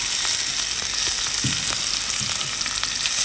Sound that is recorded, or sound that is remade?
recorded